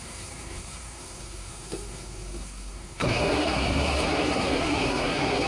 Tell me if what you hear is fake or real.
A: fake